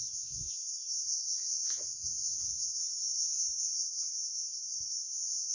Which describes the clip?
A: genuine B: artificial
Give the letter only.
B